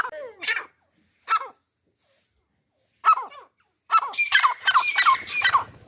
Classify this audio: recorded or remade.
recorded